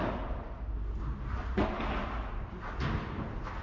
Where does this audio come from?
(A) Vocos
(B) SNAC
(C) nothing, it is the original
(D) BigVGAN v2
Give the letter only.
C